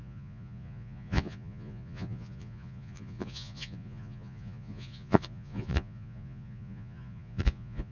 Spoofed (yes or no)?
yes